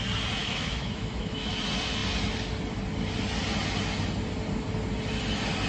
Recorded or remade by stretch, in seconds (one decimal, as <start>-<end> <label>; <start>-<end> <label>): 0.0-0.4 recorded; 0.4-1.5 remade; 1.5-5.7 recorded